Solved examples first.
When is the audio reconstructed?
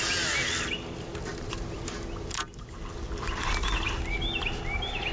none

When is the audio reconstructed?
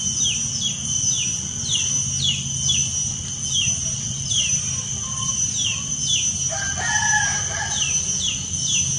none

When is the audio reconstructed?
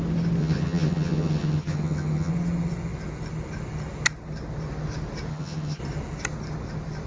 0.4-2.3 (vocoder, HiFi-GAN); 5.3-5.8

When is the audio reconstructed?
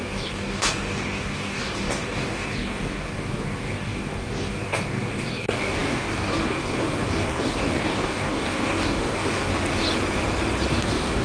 0.0-9.5 (codec, DAC); 10.7-11.2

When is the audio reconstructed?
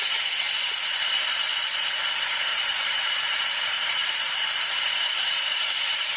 2.5-5.8 (vocoder, BigVGAN v2)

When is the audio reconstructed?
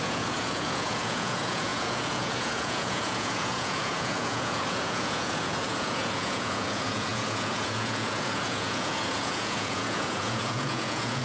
0.0-11.2 (vocoder, Vocos)